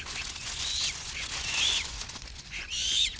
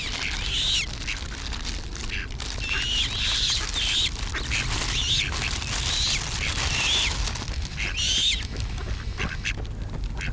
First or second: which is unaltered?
second